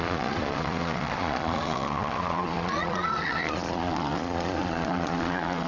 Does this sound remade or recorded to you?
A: remade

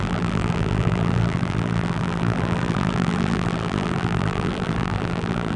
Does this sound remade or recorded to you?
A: remade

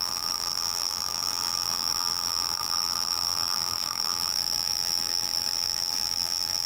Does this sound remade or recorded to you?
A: remade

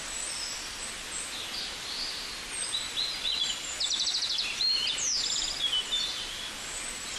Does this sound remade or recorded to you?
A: recorded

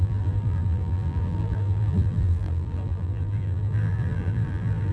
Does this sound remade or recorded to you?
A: remade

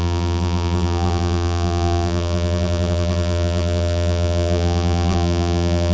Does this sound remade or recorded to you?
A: remade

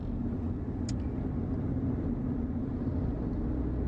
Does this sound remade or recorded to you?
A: recorded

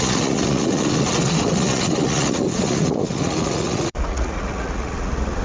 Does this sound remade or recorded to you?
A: remade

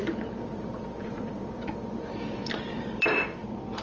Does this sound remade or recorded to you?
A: remade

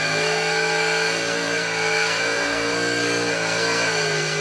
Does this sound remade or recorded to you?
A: remade